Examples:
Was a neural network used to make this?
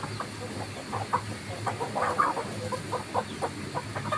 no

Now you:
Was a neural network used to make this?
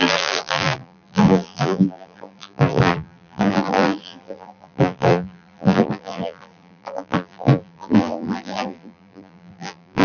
yes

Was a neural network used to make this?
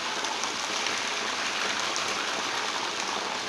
no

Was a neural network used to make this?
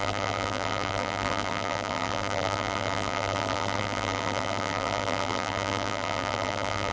yes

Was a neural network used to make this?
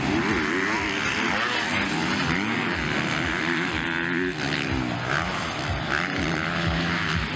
no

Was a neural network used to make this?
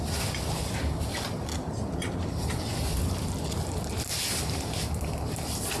no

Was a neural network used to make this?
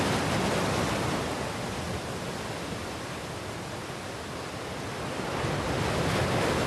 no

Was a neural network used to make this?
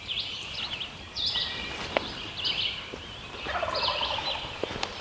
no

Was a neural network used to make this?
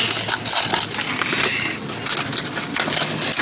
no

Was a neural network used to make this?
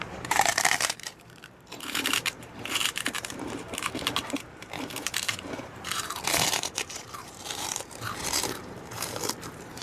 yes